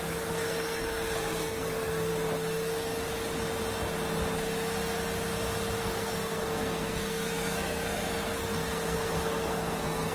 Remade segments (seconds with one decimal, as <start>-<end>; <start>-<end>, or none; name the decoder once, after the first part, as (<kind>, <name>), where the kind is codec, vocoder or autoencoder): 0.0-2.1 (codec, SNAC); 5.8-10.1